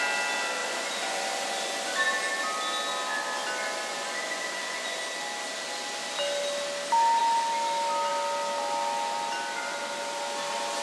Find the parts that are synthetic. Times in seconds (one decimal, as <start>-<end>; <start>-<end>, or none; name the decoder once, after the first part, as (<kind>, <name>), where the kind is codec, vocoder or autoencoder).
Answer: 0.6-1.9 (vocoder, Vocos); 3.9-5.0